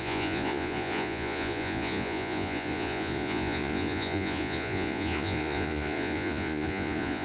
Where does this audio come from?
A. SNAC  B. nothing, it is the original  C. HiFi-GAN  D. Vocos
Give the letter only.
D